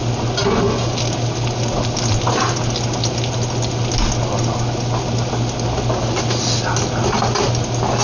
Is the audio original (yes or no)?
yes